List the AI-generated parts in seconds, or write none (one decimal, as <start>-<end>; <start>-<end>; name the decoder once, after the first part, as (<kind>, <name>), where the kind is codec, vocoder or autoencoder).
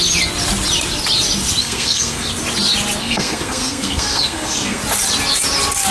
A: 1.6-2.3 (codec, SNAC); 3.0-4.8